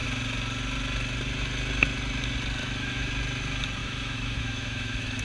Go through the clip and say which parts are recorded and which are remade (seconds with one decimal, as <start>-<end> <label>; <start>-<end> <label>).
0.0-2.6 recorded; 2.6-3.1 remade; 3.1-3.8 recorded; 3.8-5.2 remade